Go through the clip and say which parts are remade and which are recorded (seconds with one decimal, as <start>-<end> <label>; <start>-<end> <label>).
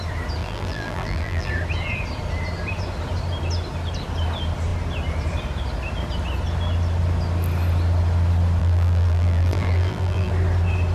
0.0-0.4 recorded; 0.4-1.5 remade; 1.5-8.6 recorded; 8.6-10.3 remade; 10.3-10.9 recorded